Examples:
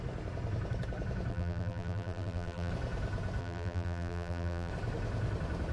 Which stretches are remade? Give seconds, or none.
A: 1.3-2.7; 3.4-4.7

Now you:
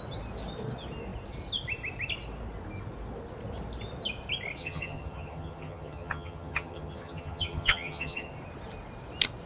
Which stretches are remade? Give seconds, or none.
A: 4.6-8.3

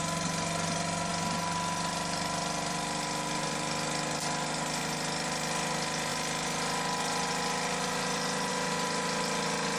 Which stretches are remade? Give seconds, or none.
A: none

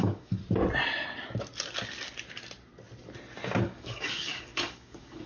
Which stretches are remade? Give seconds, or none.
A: 0.0-0.4; 3.6-5.3

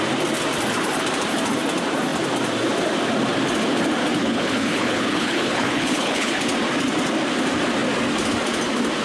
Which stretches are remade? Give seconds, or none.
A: 4.2-6.4

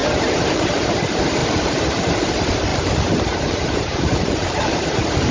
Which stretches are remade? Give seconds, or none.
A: 0.0-1.0; 1.4-2.3; 2.7-4.8